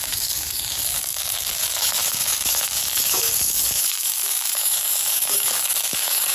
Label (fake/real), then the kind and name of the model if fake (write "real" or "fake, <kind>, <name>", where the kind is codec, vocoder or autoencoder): fake, codec, DAC